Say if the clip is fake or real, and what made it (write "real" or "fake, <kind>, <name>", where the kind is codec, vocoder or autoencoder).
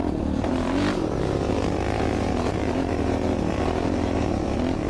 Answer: fake, vocoder, BigVGAN v2